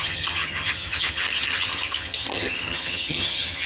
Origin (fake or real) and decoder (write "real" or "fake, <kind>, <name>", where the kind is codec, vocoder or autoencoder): fake, vocoder, HiFi-GAN